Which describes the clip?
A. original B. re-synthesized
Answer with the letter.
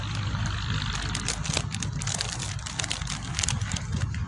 B